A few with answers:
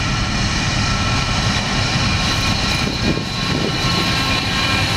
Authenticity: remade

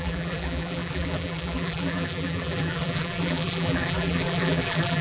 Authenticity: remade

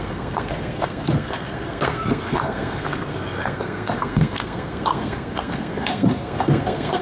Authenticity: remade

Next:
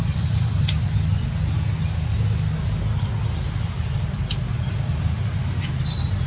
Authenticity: recorded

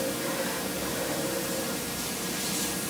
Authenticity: remade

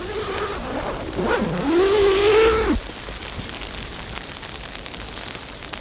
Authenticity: recorded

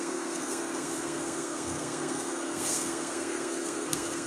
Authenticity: remade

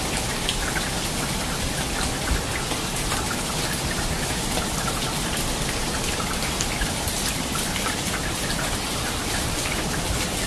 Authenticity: recorded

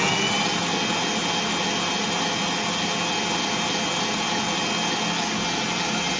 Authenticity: recorded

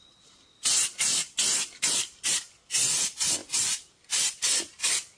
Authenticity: recorded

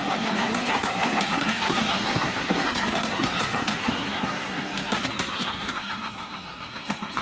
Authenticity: remade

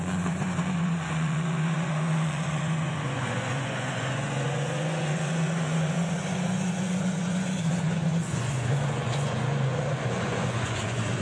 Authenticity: remade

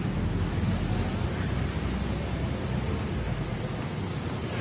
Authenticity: recorded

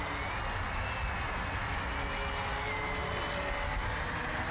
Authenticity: recorded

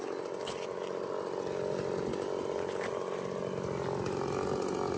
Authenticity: recorded